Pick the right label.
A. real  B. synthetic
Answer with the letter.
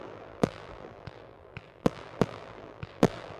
B